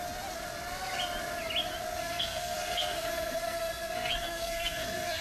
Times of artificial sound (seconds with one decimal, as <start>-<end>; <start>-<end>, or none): 2.0-5.2